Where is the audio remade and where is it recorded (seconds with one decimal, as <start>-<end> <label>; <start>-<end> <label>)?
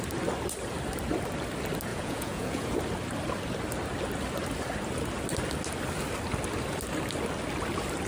0.0-1.9 recorded; 1.9-2.8 remade; 2.8-8.1 recorded